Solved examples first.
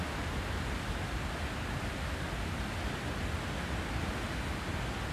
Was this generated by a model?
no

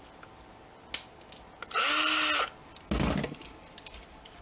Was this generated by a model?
no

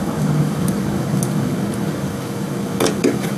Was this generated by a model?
yes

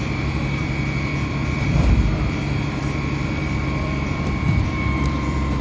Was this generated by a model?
yes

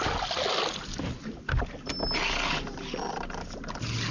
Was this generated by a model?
no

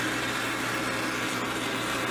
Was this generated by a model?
no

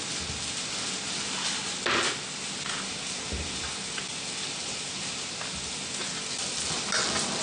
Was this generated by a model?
no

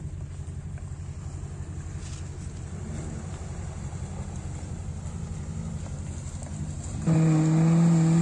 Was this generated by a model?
no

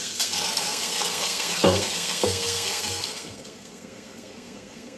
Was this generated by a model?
yes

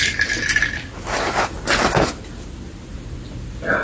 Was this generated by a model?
no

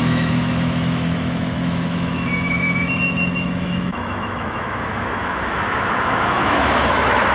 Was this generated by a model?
yes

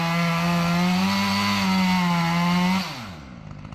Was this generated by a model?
no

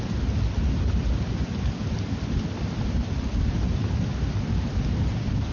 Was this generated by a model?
no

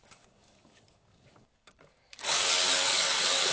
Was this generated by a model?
yes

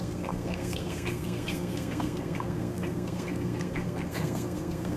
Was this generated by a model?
yes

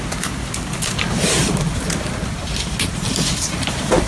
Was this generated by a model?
no